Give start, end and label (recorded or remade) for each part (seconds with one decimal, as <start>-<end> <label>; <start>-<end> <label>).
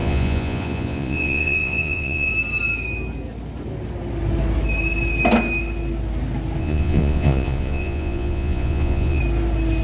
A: 0.0-2.3 remade; 2.3-6.6 recorded; 6.6-9.2 remade; 9.2-9.8 recorded